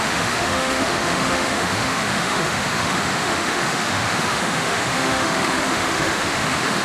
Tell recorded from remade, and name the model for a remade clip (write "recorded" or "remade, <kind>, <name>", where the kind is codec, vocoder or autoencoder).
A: remade, autoencoder, DAC-VAE